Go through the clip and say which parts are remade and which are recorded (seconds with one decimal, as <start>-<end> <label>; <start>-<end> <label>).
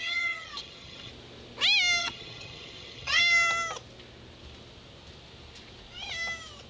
0.0-1.1 remade; 1.1-2.0 recorded; 2.0-3.2 remade; 3.2-6.7 recorded